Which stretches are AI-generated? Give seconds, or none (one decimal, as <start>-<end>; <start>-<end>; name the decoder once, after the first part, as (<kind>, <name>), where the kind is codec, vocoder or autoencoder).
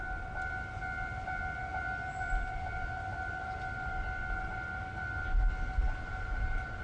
none